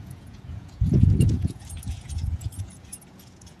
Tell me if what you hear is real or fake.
fake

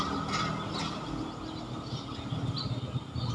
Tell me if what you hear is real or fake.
real